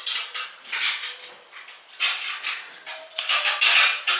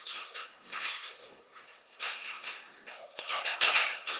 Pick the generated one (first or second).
second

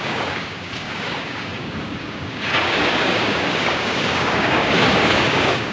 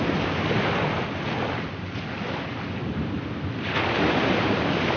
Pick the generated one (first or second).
first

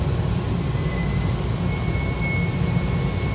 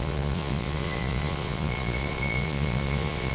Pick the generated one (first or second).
second